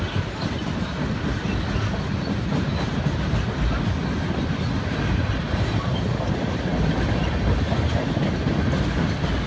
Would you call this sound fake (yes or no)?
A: no